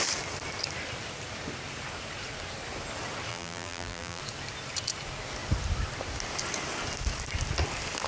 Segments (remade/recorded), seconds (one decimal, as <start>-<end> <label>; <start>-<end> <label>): 0.0-3.3 recorded; 3.3-4.2 remade; 4.2-8.1 recorded